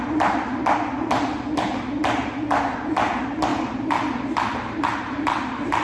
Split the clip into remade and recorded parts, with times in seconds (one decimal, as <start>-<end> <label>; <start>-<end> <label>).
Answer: 0.0-5.8 recorded